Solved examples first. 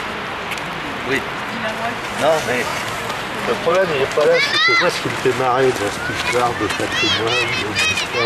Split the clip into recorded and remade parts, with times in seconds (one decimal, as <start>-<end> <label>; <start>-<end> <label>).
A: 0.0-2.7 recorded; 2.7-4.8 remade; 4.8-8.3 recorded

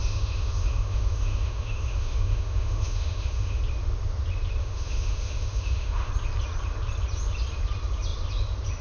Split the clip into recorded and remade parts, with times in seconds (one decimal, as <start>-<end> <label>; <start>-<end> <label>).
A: 0.0-3.6 remade; 3.6-4.6 recorded; 4.6-6.1 remade; 6.1-8.8 recorded

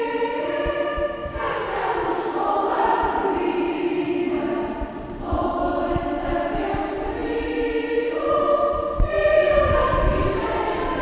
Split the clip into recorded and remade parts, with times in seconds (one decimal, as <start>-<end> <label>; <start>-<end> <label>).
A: 0.0-11.0 recorded